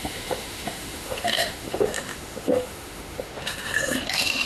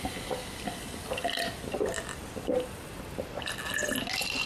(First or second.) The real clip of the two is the second